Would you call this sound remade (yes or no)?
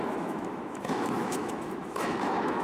yes